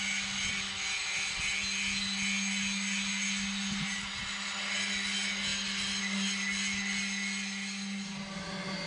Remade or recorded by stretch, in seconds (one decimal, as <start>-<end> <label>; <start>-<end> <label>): 0.0-8.9 recorded